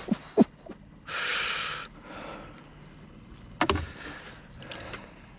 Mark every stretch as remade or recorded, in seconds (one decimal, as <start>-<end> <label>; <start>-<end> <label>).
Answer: 0.0-5.4 recorded

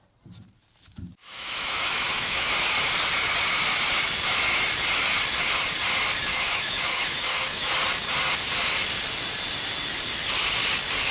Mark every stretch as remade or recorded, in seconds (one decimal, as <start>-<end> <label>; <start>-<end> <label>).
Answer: 0.0-1.2 recorded; 1.2-2.5 remade; 2.5-6.3 recorded; 6.3-7.7 remade; 7.7-11.1 recorded

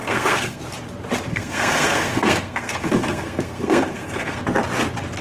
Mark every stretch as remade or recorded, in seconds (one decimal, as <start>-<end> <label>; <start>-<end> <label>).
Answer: 0.0-0.6 remade; 0.6-1.3 recorded; 1.3-4.4 remade; 4.4-5.2 recorded

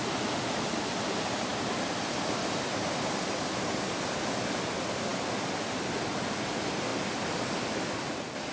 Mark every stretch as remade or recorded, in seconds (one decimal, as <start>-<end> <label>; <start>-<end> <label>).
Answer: 0.0-8.5 recorded